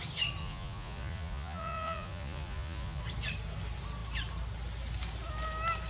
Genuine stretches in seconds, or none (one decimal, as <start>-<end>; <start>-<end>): 0.0-0.4; 3.0-5.9